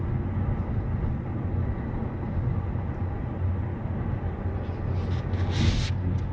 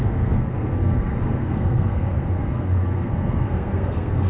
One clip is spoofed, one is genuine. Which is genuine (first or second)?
first